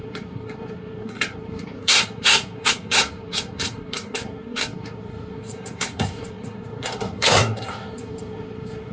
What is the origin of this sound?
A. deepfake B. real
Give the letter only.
A